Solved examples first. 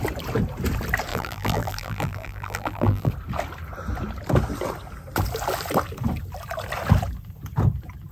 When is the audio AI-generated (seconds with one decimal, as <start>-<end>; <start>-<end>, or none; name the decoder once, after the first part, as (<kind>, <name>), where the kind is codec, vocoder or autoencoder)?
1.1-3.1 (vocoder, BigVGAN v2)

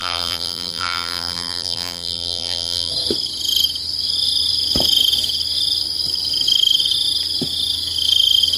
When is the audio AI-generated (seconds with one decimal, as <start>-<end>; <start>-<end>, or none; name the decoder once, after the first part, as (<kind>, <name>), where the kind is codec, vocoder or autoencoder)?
0.0-2.9 (vocoder, BigVGAN v2)

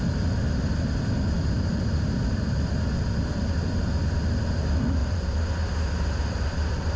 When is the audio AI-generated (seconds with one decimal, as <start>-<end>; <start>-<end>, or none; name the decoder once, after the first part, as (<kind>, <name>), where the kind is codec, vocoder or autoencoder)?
5.0-5.5 (vocoder, BigVGAN v2)

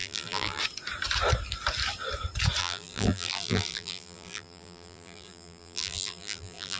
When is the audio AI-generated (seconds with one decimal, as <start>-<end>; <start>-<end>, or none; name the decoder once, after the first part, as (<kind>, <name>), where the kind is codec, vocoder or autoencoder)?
0.0-0.6 (vocoder, BigVGAN v2); 2.6-6.8

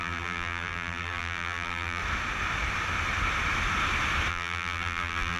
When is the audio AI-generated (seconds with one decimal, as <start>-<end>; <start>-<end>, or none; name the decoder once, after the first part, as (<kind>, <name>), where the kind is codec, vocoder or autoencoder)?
0.0-2.0 (vocoder, BigVGAN v2); 4.3-5.4

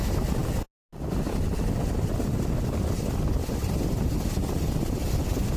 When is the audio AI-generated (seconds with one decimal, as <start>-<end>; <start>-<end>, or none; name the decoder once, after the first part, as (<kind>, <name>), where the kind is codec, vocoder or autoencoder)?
none